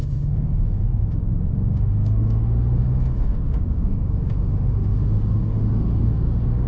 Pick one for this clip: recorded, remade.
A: remade